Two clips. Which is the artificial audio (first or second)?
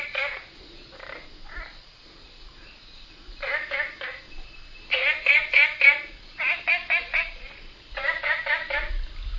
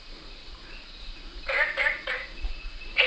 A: second